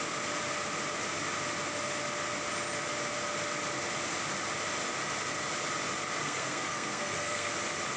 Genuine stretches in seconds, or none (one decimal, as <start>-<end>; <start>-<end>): 0.0-6.2; 7.5-8.0